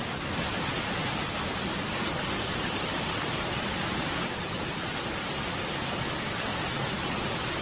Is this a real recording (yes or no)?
yes